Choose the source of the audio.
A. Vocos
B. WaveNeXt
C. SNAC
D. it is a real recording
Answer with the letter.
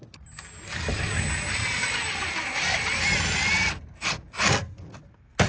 D